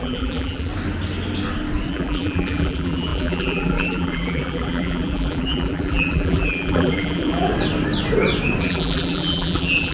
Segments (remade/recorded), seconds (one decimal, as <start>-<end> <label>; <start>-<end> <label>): 0.0-0.7 remade; 0.7-1.9 recorded; 1.9-7.5 remade; 7.5-8.6 recorded; 8.6-9.9 remade